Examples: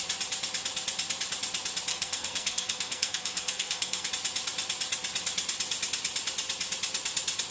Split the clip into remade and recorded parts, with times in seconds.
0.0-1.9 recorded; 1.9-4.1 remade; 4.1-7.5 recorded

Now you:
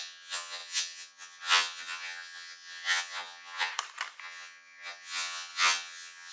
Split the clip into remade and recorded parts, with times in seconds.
0.0-3.7 remade; 3.7-4.2 recorded; 4.2-6.3 remade

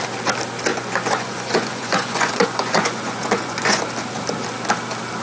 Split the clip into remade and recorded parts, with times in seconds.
0.0-0.7 recorded; 0.7-3.8 remade; 3.8-5.2 recorded

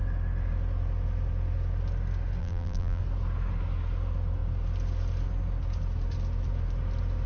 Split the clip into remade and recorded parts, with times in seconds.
0.0-2.4 recorded; 2.4-3.0 remade; 3.0-7.3 recorded

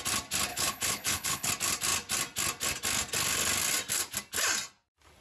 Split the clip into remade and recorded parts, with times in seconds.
0.0-0.5 recorded; 0.5-1.5 remade; 1.5-5.2 recorded